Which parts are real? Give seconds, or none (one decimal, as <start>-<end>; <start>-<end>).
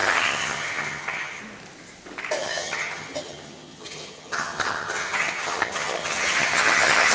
1.4-2.4